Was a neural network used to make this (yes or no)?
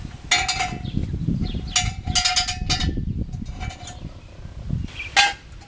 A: no